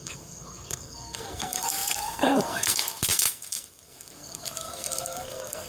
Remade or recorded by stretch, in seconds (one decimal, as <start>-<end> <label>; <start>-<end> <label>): 0.0-5.7 remade

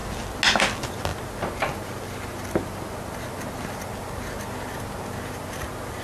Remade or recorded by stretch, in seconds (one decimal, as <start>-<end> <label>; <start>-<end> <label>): 0.0-6.0 recorded

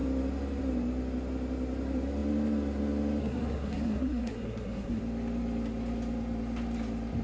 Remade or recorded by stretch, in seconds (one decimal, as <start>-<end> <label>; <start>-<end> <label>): 0.0-3.2 recorded; 3.2-5.0 remade; 5.0-7.2 recorded

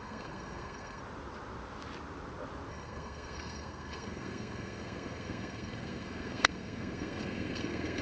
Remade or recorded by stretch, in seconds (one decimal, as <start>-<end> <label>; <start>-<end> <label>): 0.0-1.0 remade; 1.0-2.7 recorded; 2.7-8.0 remade

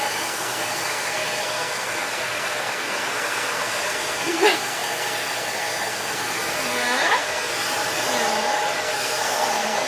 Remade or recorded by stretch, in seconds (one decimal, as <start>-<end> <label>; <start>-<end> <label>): 0.0-7.5 remade; 7.5-8.8 recorded; 8.8-9.9 remade

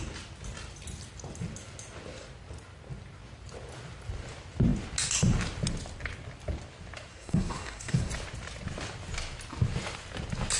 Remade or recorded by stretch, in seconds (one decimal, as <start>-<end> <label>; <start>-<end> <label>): 0.0-7.1 recorded; 7.1-8.1 remade; 8.1-10.6 recorded

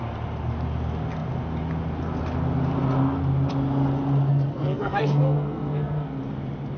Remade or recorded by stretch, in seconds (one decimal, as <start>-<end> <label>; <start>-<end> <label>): 0.0-4.3 recorded; 4.3-6.2 remade; 6.2-6.8 recorded

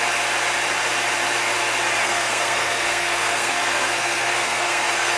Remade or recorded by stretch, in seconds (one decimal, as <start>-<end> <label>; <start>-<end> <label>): 0.0-2.0 recorded; 2.0-5.2 remade